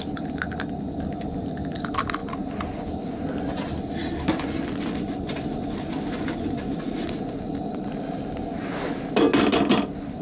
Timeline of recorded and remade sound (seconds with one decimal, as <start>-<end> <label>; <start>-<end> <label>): 0.0-10.2 recorded